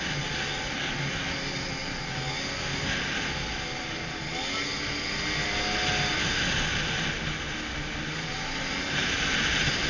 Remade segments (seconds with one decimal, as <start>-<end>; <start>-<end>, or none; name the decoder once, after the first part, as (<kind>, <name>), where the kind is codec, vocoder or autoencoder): none